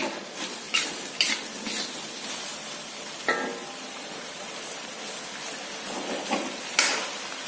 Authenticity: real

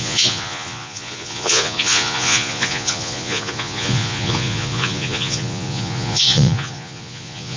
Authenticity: fake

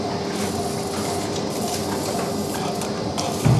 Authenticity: real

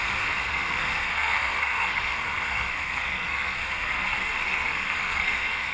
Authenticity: fake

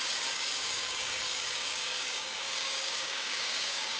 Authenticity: fake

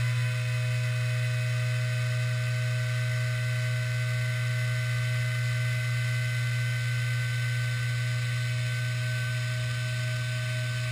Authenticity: real